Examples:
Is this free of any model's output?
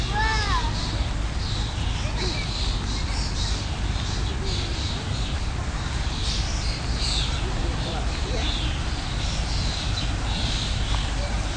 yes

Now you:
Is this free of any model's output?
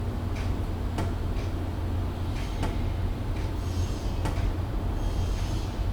yes